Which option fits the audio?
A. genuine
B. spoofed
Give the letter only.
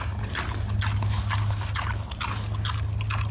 A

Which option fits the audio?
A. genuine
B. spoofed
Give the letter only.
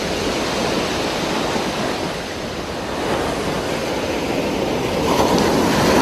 A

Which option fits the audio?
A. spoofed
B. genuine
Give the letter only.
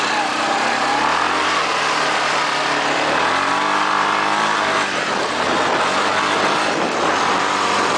A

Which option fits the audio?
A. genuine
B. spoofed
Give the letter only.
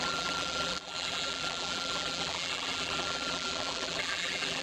B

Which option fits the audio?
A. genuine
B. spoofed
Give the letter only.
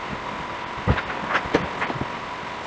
A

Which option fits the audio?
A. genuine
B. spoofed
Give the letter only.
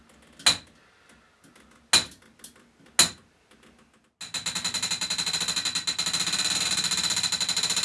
A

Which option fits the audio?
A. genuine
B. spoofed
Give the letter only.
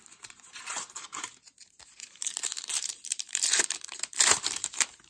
B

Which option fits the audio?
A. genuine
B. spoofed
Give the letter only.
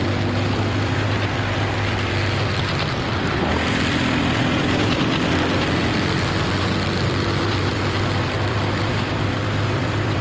B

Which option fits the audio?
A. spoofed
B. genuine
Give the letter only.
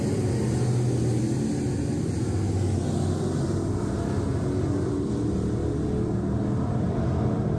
B